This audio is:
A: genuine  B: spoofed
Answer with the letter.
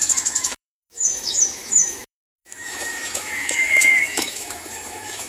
B